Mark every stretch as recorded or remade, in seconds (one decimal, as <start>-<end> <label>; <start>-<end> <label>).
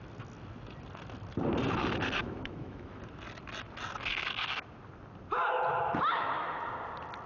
0.0-2.2 recorded; 2.2-3.0 remade; 3.0-6.1 recorded; 6.1-6.6 remade; 6.6-7.3 recorded